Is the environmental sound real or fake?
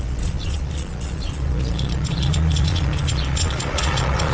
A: fake